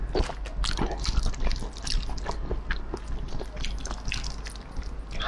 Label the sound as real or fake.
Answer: real